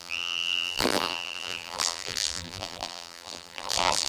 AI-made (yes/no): yes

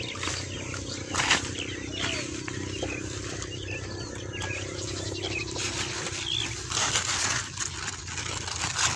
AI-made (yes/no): no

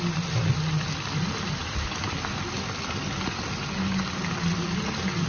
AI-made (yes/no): no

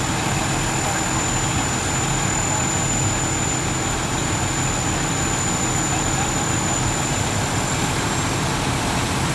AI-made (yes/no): no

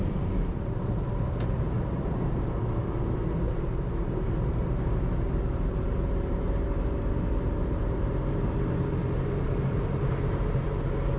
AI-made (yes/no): yes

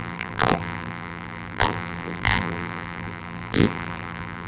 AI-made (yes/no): yes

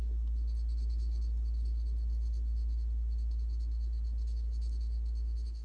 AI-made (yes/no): no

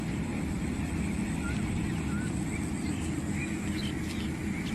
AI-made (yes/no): no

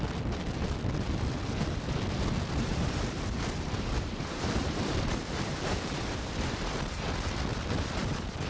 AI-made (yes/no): yes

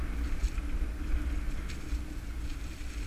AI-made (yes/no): no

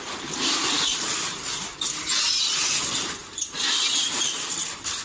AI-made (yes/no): yes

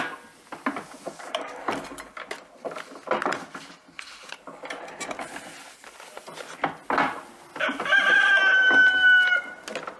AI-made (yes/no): no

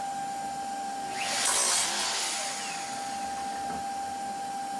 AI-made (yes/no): no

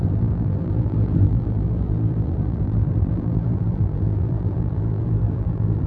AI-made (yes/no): yes